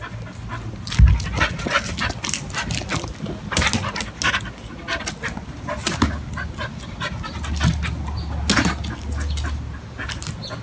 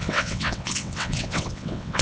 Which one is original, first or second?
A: first